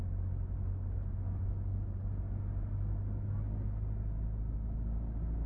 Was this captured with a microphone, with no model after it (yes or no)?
yes